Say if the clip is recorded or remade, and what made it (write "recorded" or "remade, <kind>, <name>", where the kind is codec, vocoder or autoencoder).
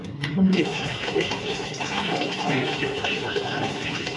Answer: remade, codec, SNAC